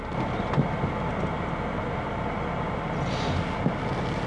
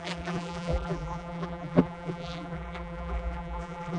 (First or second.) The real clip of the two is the first